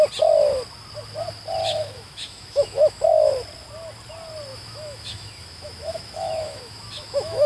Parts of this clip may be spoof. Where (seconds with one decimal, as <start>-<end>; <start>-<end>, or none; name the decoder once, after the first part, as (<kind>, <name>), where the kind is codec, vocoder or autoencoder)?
1.6-3.3 (autoencoder, DAC-VAE); 4.5-7.5